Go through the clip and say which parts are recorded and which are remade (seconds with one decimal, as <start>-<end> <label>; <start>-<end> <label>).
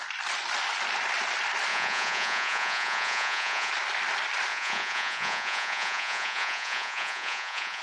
0.0-1.7 recorded; 1.7-3.7 remade; 3.7-4.5 recorded; 4.5-7.8 remade